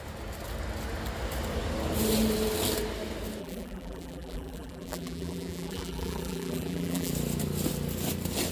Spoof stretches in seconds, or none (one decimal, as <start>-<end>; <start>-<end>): 3.4-7.1